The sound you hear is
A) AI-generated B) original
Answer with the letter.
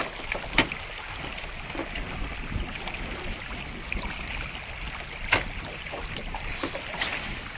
B